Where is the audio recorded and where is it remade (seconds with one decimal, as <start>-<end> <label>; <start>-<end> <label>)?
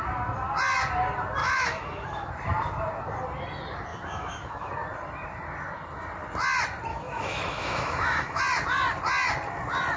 0.0-1.4 recorded; 1.4-2.3 remade; 2.3-3.9 recorded; 3.9-4.7 remade; 4.7-6.9 recorded; 6.9-8.4 remade; 8.4-10.0 recorded